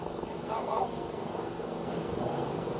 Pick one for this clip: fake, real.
fake